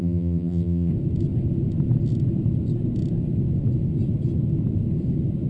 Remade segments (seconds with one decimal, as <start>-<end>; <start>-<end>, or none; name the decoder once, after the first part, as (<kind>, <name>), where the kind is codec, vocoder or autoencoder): 0.0-0.9 (vocoder, BigVGAN v2)